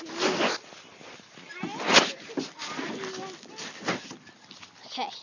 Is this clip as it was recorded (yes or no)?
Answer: yes